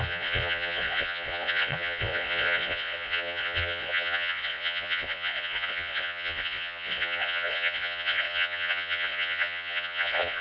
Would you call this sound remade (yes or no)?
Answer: yes